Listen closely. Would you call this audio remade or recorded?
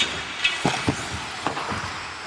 recorded